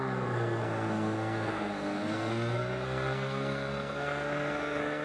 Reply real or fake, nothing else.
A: fake